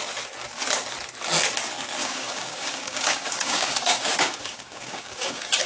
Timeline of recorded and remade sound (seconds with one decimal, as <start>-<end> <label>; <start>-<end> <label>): 0.0-2.0 recorded; 2.0-5.7 remade